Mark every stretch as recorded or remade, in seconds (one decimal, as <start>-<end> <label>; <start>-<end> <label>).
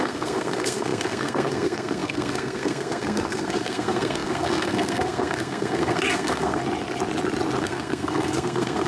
0.0-6.6 remade; 6.6-7.6 recorded; 7.6-8.9 remade